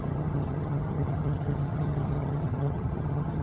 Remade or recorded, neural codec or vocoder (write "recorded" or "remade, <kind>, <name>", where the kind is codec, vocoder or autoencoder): remade, vocoder, HiFi-GAN